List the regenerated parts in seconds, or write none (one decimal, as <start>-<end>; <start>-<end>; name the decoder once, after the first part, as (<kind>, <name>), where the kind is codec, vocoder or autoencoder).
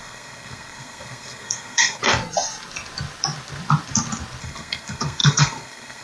0.0-2.0 (codec, SNAC); 4.4-6.0